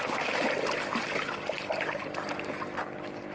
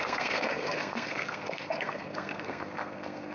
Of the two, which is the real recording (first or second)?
first